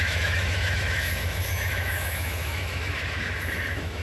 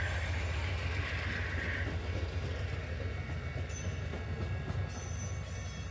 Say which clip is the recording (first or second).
second